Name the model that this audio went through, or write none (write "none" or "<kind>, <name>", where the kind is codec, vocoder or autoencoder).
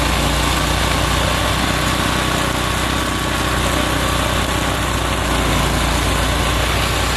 none